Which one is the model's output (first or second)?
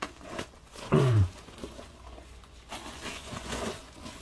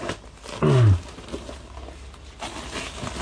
first